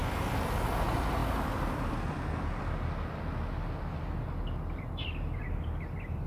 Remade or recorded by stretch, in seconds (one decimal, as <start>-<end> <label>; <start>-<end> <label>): 0.0-1.2 recorded; 1.2-2.4 remade; 2.4-6.3 recorded